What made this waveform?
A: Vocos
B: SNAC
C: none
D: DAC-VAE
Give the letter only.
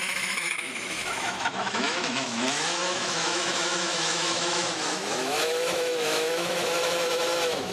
D